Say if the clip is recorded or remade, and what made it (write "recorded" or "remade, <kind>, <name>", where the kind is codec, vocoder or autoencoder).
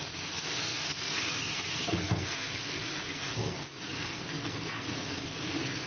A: remade, codec, SNAC